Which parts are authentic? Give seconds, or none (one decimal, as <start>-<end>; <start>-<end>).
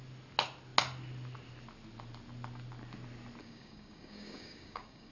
0.0-3.4